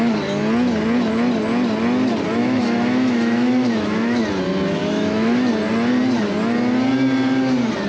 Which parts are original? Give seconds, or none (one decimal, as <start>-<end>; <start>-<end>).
0.0-2.4; 4.2-4.8; 5.5-7.9